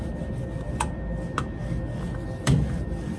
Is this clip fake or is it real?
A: real